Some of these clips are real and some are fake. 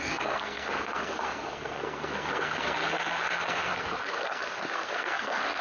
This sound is fake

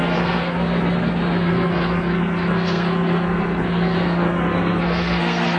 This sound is fake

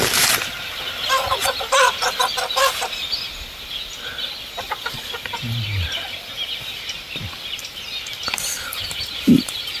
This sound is real